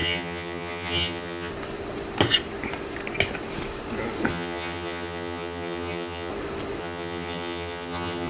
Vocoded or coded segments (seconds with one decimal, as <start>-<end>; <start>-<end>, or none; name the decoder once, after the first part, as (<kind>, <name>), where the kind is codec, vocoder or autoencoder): 0.0-1.5 (vocoder, HiFi-GAN); 4.3-6.3; 6.8-8.3